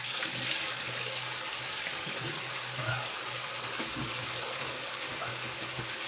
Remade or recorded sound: remade